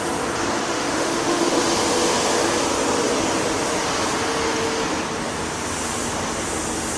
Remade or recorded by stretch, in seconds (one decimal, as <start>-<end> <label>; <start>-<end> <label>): 0.0-0.6 recorded; 0.6-1.6 remade; 1.6-7.0 recorded